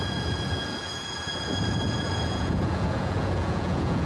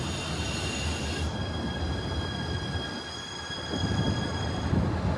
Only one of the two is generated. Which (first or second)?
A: first